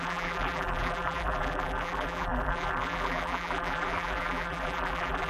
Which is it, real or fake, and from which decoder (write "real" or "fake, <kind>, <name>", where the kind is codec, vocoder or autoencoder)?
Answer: fake, vocoder, BigVGAN v2